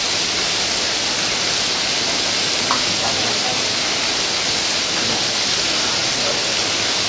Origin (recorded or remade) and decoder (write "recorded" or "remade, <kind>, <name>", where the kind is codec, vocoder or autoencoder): recorded